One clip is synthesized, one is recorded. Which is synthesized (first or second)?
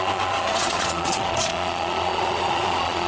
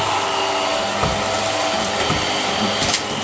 first